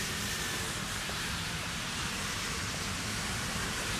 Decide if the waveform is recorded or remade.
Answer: remade